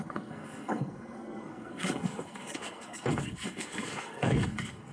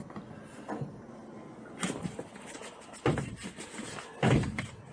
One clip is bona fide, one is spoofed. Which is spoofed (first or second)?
first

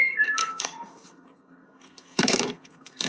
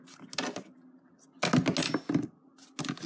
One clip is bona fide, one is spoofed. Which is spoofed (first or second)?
first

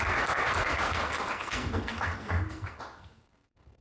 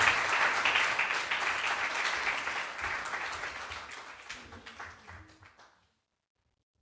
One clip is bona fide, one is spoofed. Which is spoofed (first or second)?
first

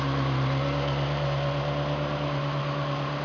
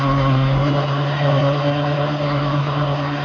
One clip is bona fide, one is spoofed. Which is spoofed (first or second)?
second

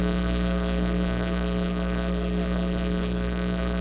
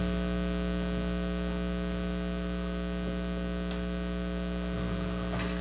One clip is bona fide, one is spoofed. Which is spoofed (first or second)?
first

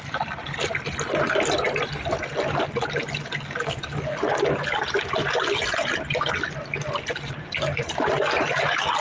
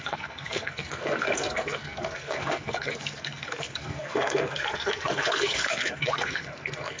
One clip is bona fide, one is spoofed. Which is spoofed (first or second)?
second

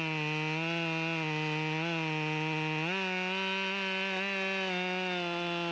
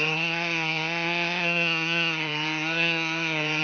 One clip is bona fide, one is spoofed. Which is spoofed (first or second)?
second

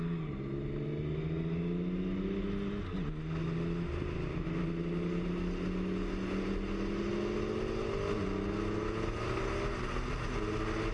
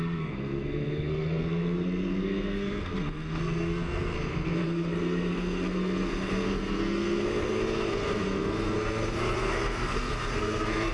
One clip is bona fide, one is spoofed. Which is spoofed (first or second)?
second